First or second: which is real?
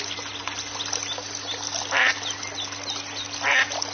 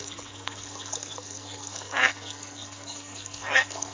first